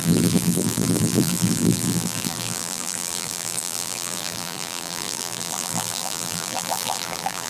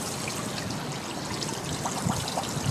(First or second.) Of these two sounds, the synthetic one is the first